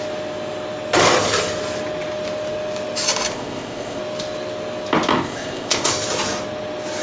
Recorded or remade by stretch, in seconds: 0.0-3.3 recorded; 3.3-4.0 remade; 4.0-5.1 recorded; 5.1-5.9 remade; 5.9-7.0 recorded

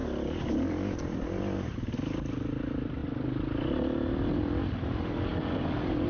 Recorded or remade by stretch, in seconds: 0.0-6.1 recorded

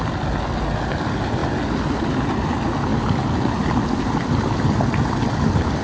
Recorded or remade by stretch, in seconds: 0.0-5.8 recorded

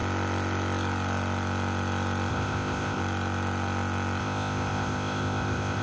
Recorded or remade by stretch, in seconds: 0.0-2.3 recorded; 2.3-3.0 remade; 3.0-4.2 recorded; 4.2-5.8 remade

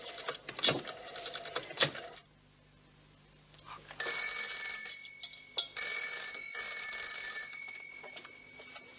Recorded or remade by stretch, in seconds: 0.0-9.0 recorded